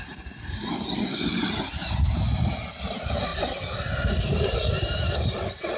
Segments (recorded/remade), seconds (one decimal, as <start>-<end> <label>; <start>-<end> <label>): 0.0-5.8 recorded